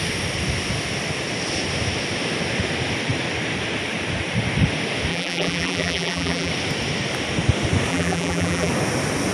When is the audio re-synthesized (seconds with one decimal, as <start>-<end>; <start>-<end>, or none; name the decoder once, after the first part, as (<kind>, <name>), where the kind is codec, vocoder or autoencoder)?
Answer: 5.1-6.5 (vocoder, BigVGAN v2); 7.9-8.7